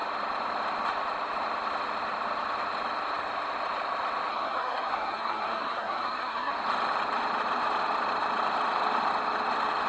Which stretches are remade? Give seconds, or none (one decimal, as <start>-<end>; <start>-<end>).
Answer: 4.3-6.5